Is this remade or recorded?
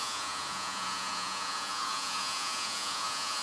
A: remade